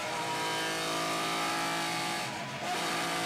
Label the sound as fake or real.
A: real